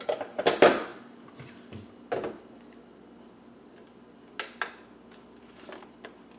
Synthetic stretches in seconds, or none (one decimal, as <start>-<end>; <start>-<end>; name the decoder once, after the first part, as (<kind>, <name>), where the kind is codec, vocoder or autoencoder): 0.0-0.9 (vocoder, BigVGAN v2); 4.7-6.4